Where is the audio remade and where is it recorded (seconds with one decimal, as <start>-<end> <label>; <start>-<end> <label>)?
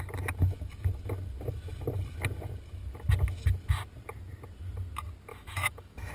0.0-5.3 recorded; 5.3-6.1 remade